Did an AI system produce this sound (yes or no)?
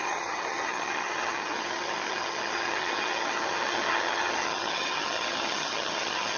yes